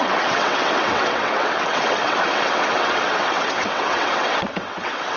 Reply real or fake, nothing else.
fake